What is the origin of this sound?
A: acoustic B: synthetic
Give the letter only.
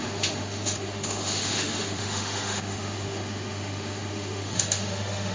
B